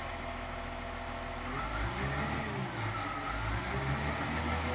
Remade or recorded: recorded